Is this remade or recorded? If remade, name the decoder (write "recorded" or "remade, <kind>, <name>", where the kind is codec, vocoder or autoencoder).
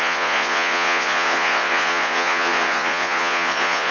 remade, vocoder, Vocos